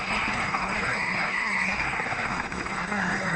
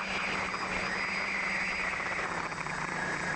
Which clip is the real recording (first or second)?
second